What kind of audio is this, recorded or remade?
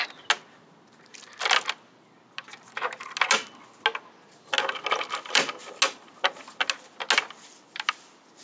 recorded